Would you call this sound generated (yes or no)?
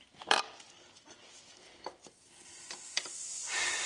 no